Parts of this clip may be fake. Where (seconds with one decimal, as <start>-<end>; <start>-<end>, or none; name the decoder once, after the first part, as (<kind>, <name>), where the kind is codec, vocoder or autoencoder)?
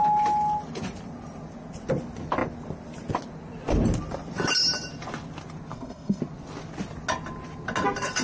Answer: 5.7-6.2 (codec, SNAC)